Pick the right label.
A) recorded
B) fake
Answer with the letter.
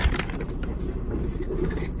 B